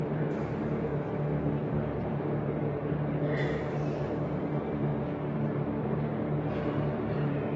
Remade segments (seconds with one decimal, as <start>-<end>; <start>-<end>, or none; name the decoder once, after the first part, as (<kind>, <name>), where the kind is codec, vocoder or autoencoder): 0.0-0.9 (vocoder, BigVGAN v2); 1.7-4.9; 5.8-7.6